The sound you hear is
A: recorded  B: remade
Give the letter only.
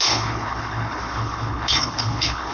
B